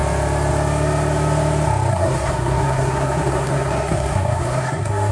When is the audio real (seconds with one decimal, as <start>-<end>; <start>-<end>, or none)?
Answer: 0.0-1.9